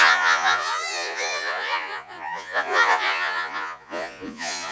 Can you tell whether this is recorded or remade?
remade